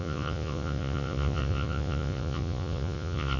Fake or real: fake